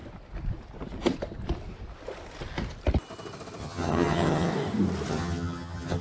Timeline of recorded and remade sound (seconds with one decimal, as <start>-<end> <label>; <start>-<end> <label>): 0.0-3.6 recorded; 3.6-4.5 remade; 4.5-5.1 recorded; 5.1-6.0 remade